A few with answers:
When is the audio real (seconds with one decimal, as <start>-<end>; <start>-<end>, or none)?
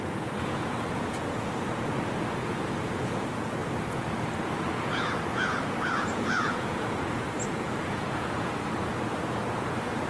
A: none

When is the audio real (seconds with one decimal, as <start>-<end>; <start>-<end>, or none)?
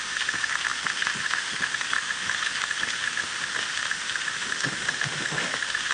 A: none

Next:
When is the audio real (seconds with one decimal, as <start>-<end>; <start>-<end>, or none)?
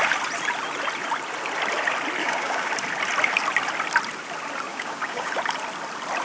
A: 0.0-2.2; 2.7-4.7; 5.3-6.2